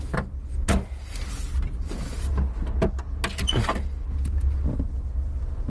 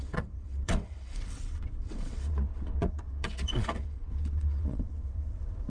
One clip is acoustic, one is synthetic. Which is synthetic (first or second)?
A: second